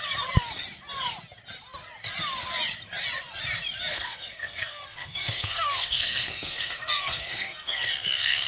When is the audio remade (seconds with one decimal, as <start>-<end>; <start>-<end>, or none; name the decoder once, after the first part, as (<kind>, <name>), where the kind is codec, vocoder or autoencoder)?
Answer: 3.9-8.5 (codec, SNAC)

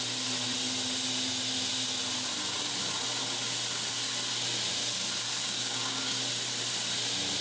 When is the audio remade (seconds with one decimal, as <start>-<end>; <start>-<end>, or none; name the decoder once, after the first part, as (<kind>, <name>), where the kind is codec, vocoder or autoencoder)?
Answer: 5.4-6.2 (codec, DAC)

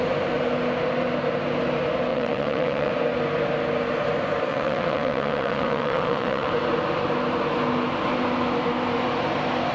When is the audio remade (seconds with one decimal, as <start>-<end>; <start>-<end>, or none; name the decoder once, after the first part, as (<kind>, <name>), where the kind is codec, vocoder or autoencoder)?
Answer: 2.1-2.9 (vocoder, WaveNeXt); 4.5-6.5

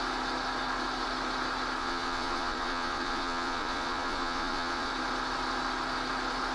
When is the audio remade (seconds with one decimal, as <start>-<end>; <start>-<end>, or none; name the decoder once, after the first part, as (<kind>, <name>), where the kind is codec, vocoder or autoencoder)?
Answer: 1.8-4.9 (vocoder, Vocos)